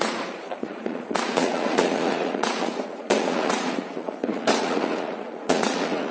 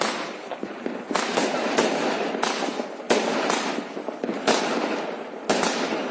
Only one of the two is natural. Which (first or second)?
second